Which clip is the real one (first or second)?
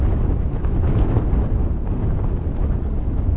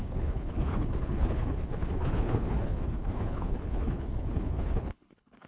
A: first